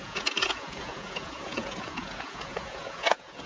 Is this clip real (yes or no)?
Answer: no